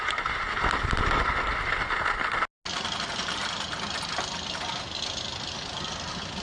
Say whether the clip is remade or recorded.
recorded